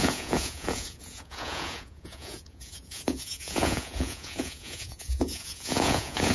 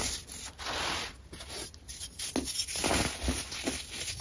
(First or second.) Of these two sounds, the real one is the second